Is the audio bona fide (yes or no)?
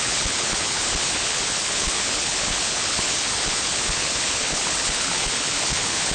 no